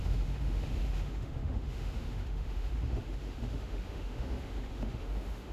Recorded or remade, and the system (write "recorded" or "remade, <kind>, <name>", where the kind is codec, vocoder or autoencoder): remade, autoencoder, DAC-VAE